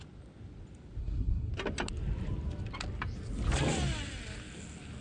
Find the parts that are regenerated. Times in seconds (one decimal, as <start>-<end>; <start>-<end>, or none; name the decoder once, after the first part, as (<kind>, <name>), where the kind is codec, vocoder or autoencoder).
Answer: 1.0-1.5 (codec, SNAC)